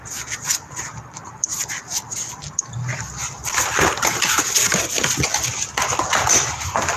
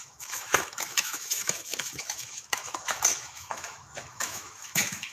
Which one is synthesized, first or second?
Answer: second